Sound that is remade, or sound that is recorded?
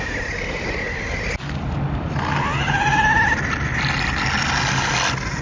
recorded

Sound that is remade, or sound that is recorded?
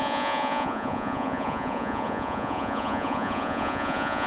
remade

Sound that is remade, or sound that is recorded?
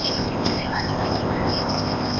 remade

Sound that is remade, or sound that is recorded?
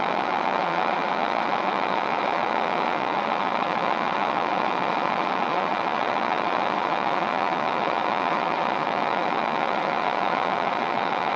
remade